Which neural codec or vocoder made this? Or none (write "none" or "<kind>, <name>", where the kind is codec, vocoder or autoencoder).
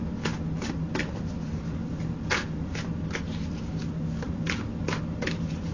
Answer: none